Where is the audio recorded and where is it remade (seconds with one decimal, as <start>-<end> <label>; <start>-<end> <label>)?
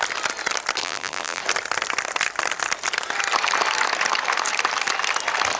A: 0.0-0.8 recorded; 0.8-1.4 remade; 1.4-5.6 recorded